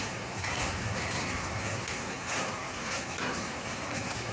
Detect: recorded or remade remade